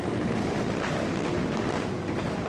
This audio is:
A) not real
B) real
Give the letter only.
B